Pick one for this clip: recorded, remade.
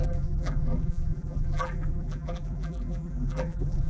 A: remade